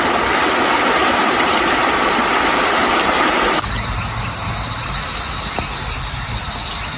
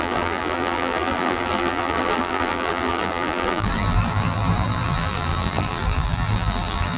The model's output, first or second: second